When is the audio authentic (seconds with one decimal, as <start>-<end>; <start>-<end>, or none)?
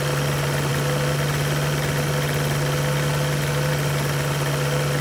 0.0-5.0